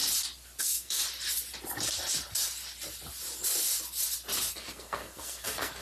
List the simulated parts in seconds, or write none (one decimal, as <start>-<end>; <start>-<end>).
0.6-1.0; 4.5-5.8